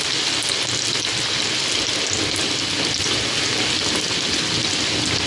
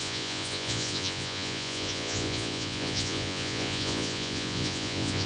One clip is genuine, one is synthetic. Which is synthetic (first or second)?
second